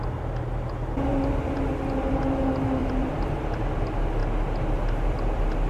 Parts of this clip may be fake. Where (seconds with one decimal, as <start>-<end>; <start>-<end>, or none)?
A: 2.8-3.3